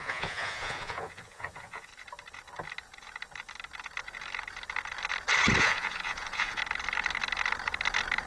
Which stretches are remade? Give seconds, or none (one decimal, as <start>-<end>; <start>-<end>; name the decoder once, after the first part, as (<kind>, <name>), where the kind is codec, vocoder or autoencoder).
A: 0.0-1.9 (vocoder, Vocos); 5.6-6.6

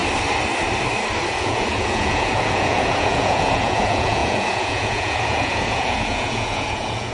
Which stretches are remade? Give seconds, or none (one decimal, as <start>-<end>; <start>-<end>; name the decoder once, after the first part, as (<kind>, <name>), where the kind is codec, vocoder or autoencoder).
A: 1.3-7.1 (vocoder, Vocos)

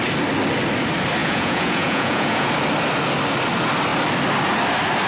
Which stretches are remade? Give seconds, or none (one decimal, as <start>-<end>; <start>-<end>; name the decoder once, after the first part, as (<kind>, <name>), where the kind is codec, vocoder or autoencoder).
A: 1.2-2.5 (vocoder, Vocos)

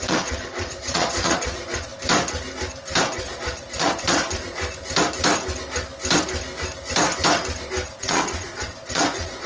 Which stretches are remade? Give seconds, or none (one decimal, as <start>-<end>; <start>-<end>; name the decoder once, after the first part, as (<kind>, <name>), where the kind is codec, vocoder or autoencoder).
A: 0.0-1.9 (vocoder, Vocos); 3.0-4.6; 7.9-9.5

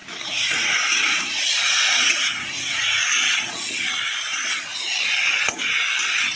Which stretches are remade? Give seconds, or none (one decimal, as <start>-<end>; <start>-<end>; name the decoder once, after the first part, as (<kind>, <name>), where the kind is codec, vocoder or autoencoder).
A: 0.0-3.0 (vocoder, Vocos)

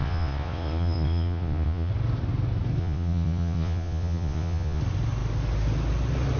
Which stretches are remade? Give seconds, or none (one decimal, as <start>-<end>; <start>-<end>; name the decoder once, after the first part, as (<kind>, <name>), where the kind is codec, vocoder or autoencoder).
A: 0.0-1.9 (vocoder, Vocos); 2.8-4.8